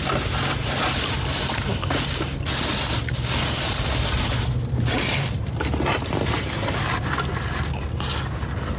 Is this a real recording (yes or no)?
yes